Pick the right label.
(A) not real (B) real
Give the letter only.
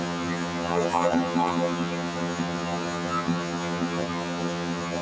A